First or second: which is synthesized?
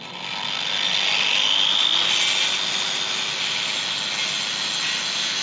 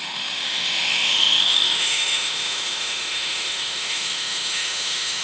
second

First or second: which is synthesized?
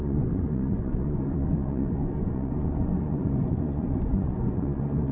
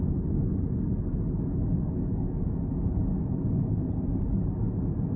first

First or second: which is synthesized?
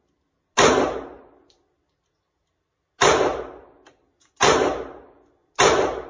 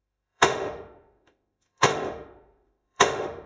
second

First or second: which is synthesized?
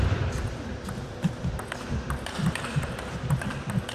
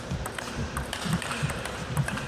second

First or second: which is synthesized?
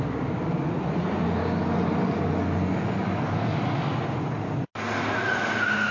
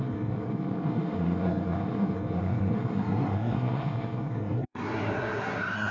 second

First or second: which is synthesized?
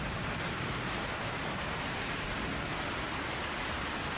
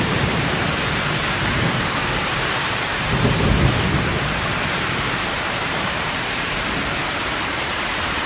second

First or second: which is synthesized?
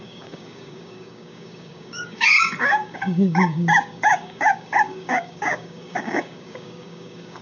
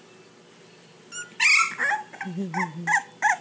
first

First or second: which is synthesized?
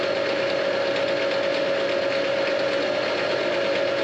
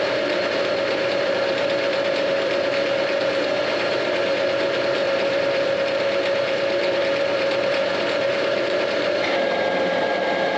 second